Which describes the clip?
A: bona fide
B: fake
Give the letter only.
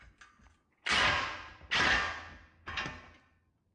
A